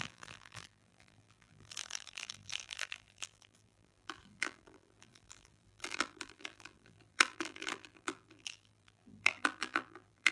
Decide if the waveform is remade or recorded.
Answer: remade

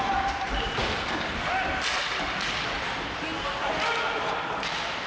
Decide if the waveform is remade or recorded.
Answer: recorded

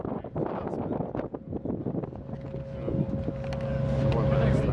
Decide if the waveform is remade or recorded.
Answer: recorded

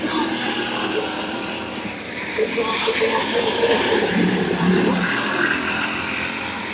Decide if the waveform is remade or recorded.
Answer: remade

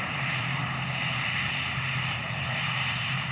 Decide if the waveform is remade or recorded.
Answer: remade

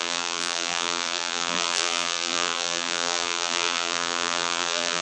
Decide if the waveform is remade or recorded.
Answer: remade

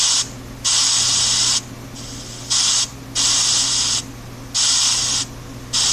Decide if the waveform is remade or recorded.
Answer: recorded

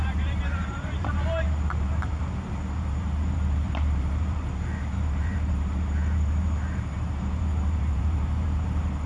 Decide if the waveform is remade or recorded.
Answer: remade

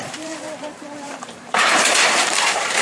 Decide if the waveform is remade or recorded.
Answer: remade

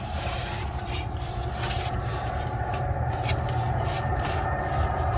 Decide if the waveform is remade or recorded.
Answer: remade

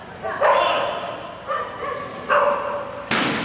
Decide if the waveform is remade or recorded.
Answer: recorded